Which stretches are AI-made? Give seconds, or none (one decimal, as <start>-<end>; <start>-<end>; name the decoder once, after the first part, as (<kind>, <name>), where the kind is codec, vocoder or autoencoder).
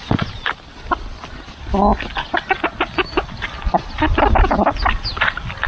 none